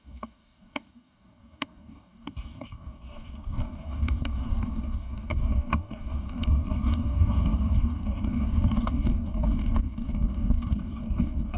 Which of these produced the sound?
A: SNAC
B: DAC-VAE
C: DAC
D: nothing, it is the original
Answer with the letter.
C